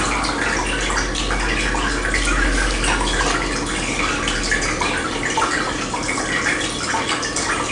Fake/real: real